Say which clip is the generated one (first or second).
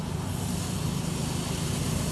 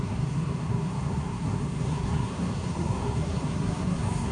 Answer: second